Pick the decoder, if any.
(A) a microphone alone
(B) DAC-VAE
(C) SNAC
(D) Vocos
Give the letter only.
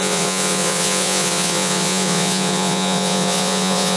D